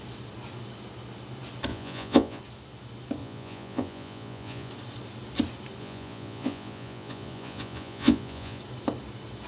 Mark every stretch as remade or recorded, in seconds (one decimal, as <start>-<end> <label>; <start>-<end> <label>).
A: 0.0-1.7 recorded; 1.7-2.4 remade; 2.4-3.2 recorded; 3.2-4.7 remade; 4.7-5.8 recorded; 5.8-8.6 remade; 8.6-9.5 recorded